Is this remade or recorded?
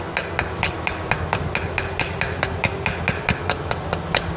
recorded